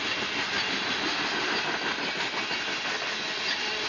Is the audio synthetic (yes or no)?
no